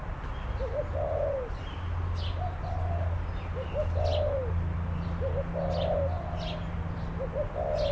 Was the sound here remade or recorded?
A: recorded